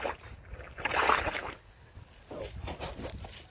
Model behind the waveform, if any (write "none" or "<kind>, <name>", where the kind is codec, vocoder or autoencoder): none